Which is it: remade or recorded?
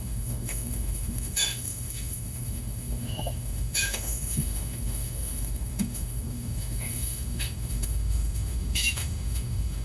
remade